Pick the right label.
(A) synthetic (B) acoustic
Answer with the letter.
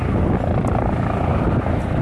B